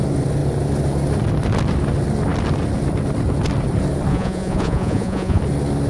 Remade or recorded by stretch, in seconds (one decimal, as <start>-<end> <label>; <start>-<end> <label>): 0.0-4.1 recorded; 4.1-5.4 remade; 5.4-5.9 recorded

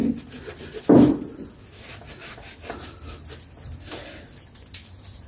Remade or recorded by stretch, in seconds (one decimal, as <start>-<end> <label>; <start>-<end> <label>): 0.0-5.3 recorded

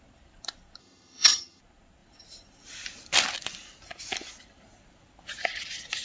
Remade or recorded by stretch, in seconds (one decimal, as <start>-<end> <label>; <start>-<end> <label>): 0.0-0.8 recorded; 0.8-1.6 remade; 1.6-6.0 recorded

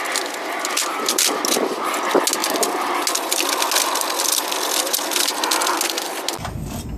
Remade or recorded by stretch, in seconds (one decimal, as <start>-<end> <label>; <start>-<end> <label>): 0.0-7.0 recorded

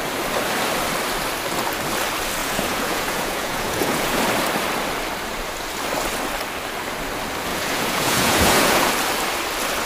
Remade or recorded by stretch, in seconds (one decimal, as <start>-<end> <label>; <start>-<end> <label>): 0.0-2.4 recorded; 2.4-4.2 remade; 4.2-7.5 recorded; 7.5-8.9 remade; 8.9-9.9 recorded